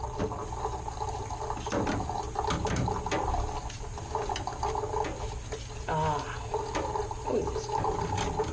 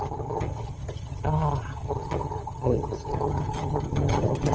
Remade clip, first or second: second